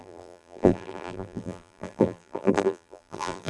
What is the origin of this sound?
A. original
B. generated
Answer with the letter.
B